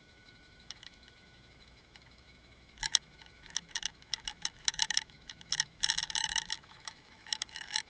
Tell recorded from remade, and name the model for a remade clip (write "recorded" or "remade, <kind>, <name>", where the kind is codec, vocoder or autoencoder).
remade, autoencoder, DAC-VAE